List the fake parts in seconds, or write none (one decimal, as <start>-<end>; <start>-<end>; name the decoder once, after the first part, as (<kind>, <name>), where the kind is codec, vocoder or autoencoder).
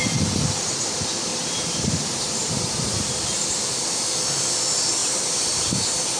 1.3-2.4 (vocoder, BigVGAN v2); 5.0-5.7